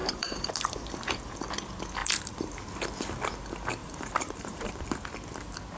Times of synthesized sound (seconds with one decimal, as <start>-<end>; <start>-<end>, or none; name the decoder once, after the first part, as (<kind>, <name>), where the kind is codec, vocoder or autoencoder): 0.0-1.5 (vocoder, BigVGAN v2); 2.0-2.6; 3.8-4.7